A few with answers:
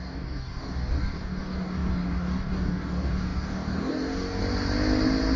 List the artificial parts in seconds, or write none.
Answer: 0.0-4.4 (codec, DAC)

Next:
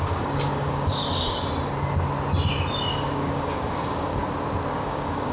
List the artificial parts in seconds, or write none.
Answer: 0.0-1.0 (codec, DAC); 2.9-4.2; 4.7-5.3

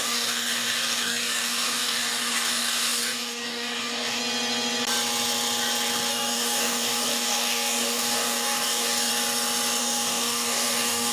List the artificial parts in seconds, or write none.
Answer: 0.0-4.2 (codec, DAC); 6.1-9.1; 9.8-11.1